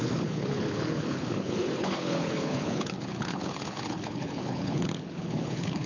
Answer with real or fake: fake